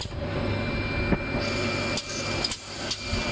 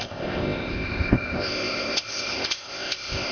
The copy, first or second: second